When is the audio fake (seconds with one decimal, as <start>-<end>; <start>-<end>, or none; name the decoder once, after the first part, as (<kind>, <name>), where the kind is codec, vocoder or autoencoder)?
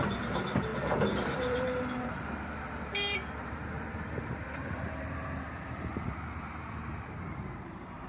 0.0-8.1 (vocoder, BigVGAN v2)